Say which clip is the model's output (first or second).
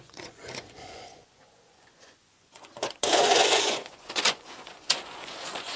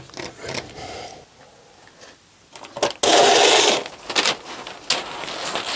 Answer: first